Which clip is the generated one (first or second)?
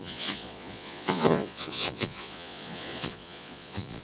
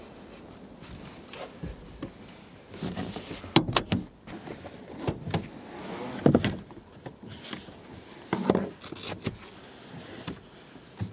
first